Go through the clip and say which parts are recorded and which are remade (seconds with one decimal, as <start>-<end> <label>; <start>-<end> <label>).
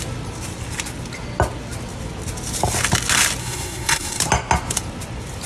0.0-3.4 recorded; 3.4-4.2 remade; 4.2-5.5 recorded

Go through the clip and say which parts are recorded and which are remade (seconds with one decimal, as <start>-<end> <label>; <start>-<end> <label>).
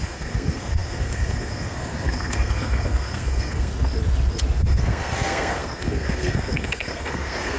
0.0-3.7 remade; 3.7-4.6 recorded; 4.6-7.6 remade